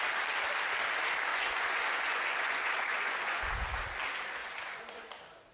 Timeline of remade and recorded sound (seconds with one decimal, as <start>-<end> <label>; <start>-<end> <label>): 0.0-1.3 recorded; 1.3-3.8 remade; 3.8-4.4 recorded; 4.4-5.1 remade; 5.1-5.5 recorded